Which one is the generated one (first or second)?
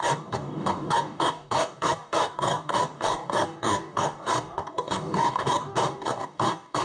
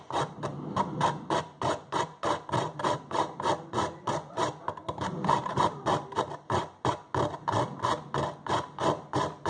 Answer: first